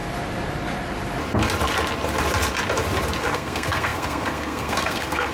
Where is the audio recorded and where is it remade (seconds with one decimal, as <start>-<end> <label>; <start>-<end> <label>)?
0.0-3.2 recorded; 3.2-5.3 remade